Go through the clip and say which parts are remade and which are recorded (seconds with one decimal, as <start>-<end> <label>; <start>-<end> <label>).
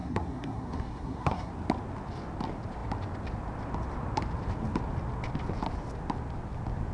0.0-1.5 remade; 1.5-6.9 recorded